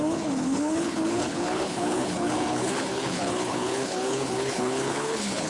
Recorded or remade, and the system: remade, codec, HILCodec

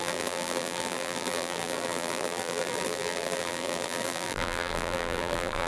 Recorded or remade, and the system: remade, vocoder, BigVGAN v2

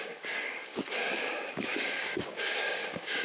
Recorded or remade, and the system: remade, codec, DAC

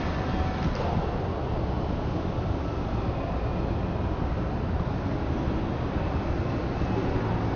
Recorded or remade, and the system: recorded